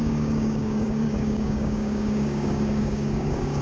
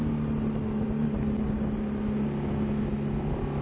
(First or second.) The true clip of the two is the second